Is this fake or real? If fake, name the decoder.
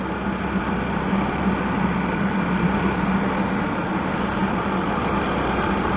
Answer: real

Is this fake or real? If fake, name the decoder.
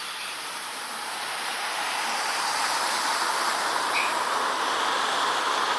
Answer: fake, vocoder, BigVGAN v2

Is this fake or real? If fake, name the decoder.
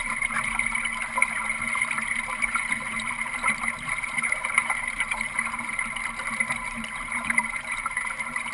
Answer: fake, vocoder, BigVGAN v2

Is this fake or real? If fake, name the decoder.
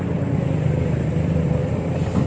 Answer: real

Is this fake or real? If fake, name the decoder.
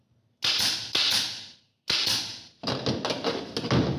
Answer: real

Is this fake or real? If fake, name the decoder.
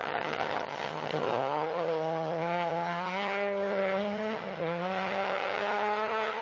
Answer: fake, vocoder, HiFi-GAN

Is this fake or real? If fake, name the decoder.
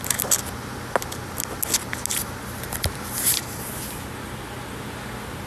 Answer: real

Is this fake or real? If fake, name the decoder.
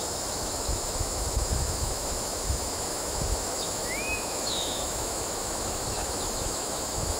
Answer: fake, autoencoder, DAC-VAE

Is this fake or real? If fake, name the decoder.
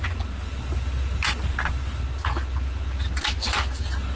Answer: real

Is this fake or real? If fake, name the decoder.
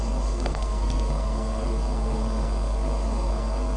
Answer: fake, codec, SNAC